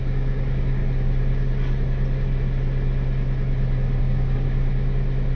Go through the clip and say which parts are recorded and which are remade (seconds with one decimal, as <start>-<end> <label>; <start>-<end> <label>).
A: 0.0-0.8 remade; 0.8-4.0 recorded; 4.0-4.7 remade; 4.7-5.4 recorded